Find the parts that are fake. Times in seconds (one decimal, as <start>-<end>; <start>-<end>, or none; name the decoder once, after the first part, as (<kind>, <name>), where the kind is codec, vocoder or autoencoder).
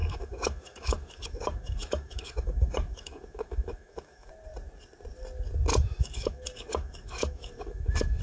0.0-4.3 (autoencoder, DAC-VAE); 5.7-8.2